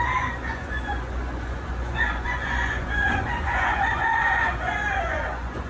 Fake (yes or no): yes